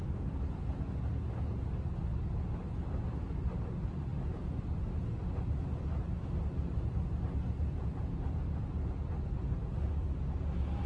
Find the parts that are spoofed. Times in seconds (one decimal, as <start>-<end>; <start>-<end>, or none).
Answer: 4.1-5.9

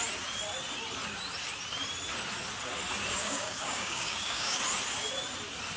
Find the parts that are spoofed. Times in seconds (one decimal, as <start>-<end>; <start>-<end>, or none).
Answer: 3.2-4.6

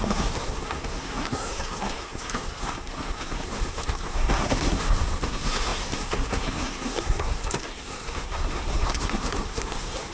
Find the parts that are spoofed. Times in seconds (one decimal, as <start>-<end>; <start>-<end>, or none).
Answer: 0.0-10.1

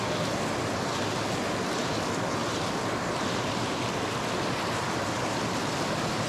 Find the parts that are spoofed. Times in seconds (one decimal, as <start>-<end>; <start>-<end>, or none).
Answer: none

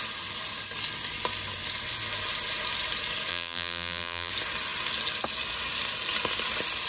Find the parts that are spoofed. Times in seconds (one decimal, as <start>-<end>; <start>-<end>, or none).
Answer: 3.3-4.3

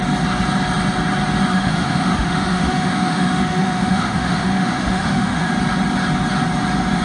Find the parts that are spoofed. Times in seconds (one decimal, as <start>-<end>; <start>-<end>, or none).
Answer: 1.5-5.5

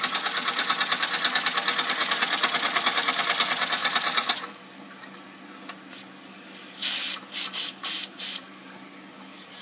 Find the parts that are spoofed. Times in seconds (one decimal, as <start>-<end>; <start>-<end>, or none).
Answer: none